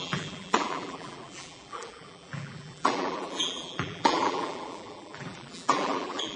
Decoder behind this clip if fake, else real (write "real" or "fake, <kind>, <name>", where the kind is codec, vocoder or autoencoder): fake, vocoder, BigVGAN v2